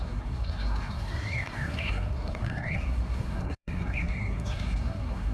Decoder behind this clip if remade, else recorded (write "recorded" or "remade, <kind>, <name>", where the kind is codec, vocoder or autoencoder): remade, codec, SNAC